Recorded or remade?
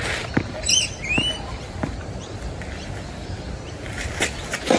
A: recorded